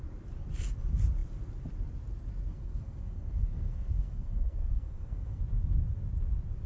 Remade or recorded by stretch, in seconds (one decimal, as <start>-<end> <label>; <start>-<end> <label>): 0.0-2.5 recorded; 2.5-5.4 remade; 5.4-6.7 recorded